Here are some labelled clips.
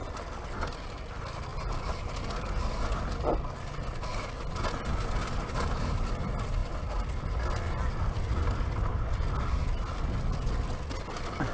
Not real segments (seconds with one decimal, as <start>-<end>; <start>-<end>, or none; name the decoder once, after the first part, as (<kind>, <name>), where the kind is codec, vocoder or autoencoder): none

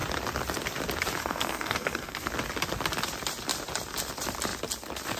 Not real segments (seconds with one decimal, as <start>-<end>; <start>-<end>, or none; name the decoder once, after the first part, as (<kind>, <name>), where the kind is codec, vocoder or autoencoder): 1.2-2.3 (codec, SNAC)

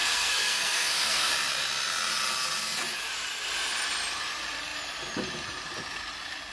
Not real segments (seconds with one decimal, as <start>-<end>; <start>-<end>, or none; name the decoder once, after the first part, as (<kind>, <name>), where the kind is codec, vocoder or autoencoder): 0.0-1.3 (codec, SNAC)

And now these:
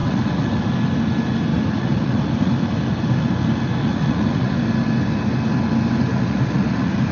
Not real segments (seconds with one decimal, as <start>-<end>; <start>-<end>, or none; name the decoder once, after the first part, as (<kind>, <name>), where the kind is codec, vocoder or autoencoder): 0.0-0.6 (vocoder, Vocos); 1.5-2.5; 3.8-4.6; 6.1-7.1

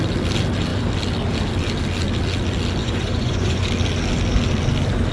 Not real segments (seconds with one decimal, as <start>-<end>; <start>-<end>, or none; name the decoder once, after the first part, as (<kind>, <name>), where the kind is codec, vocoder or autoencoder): 2.8-3.7 (vocoder, Vocos)

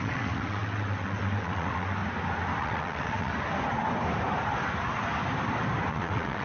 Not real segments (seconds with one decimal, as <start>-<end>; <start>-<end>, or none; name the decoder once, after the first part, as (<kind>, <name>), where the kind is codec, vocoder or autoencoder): 0.0-2.0 (vocoder, WaveNeXt); 2.6-3.3; 5.9-6.4